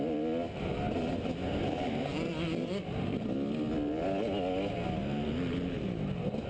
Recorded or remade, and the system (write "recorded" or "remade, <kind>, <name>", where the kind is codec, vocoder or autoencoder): recorded